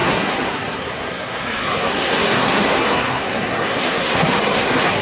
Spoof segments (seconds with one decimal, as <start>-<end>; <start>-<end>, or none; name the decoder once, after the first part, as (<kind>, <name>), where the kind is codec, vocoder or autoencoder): 0.0-5.0 (codec, SNAC)